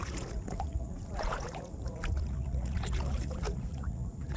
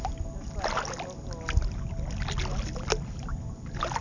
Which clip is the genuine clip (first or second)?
second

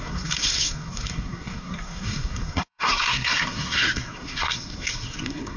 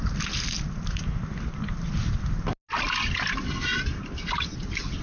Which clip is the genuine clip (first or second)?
second